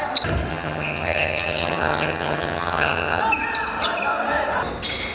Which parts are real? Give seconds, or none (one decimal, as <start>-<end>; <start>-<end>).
0.0-0.5; 3.2-5.1